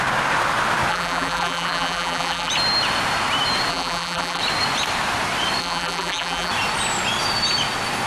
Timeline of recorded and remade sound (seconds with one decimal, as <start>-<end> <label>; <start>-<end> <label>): 0.0-0.9 recorded; 0.9-2.5 remade; 2.5-3.7 recorded; 3.7-4.4 remade; 4.4-5.6 recorded; 5.6-6.5 remade; 6.5-8.1 recorded

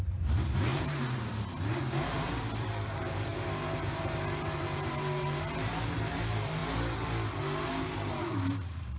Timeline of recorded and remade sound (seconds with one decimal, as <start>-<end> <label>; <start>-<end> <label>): 0.0-6.6 remade; 6.6-8.1 recorded; 8.1-9.0 remade

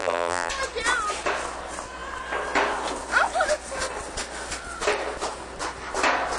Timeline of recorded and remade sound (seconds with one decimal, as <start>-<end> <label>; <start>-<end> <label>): 0.0-0.5 remade; 0.5-6.4 recorded

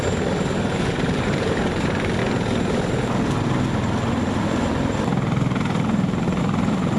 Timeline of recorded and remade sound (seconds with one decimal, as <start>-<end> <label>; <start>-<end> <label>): 0.0-0.7 recorded; 0.7-1.8 remade; 1.8-7.0 recorded

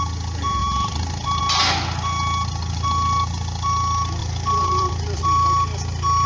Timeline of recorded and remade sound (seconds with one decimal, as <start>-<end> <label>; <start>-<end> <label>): 0.0-0.6 recorded; 0.6-1.4 remade; 1.4-4.2 recorded; 4.2-5.2 remade; 5.2-6.3 recorded